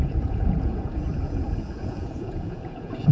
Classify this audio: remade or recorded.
remade